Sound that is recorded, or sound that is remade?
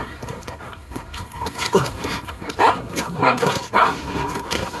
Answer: remade